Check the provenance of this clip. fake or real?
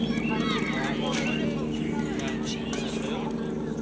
real